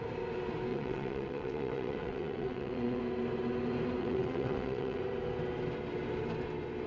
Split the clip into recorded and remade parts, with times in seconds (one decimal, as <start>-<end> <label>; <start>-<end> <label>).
0.0-0.7 recorded; 0.7-3.0 remade; 3.0-4.0 recorded; 4.0-5.0 remade; 5.0-6.9 recorded

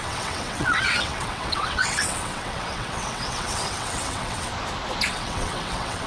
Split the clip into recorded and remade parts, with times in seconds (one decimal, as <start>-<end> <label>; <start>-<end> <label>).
0.0-4.5 remade; 4.5-5.1 recorded; 5.1-6.1 remade

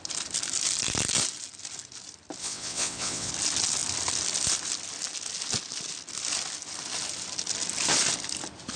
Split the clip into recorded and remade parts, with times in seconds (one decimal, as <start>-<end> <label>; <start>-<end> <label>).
0.0-2.4 recorded; 2.4-3.3 remade; 3.3-8.8 recorded